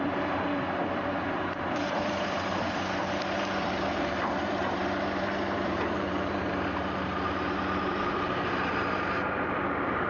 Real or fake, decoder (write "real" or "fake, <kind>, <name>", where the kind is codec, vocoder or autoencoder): fake, vocoder, BigVGAN v2